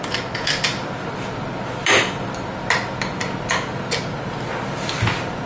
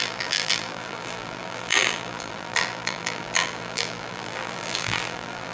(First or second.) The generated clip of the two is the second